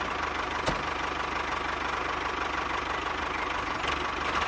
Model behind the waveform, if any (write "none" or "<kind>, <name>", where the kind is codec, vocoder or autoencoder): none